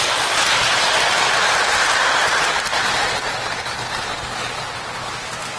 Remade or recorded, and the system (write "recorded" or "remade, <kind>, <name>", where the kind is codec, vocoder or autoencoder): recorded